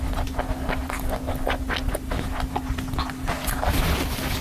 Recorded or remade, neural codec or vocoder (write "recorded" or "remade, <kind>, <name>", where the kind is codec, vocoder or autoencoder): recorded